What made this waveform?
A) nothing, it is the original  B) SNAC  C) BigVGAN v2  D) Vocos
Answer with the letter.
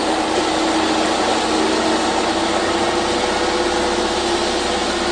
A